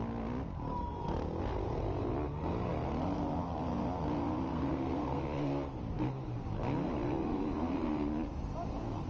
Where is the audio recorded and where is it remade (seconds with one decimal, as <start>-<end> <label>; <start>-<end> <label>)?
0.0-4.5 recorded; 4.5-5.2 remade; 5.2-9.1 recorded